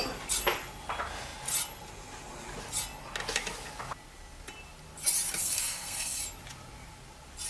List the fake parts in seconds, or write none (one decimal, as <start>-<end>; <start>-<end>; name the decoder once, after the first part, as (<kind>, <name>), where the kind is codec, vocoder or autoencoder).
5.4-6.2 (codec, SNAC)